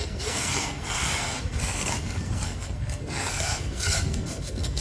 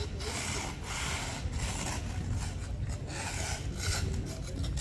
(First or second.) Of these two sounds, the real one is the second